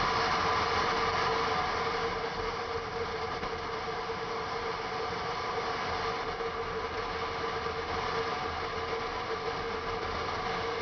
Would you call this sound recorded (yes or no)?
yes